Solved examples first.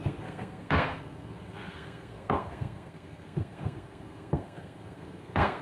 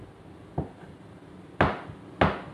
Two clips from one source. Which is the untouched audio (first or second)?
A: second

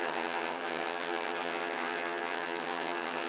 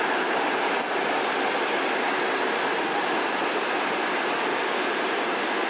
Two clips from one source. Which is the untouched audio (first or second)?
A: second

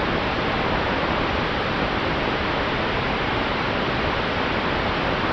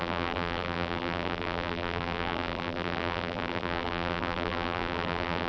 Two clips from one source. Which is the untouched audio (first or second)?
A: first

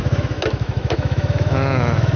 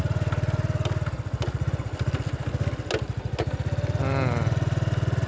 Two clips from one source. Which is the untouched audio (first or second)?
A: second